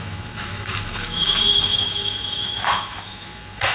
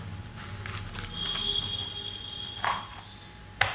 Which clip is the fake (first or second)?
first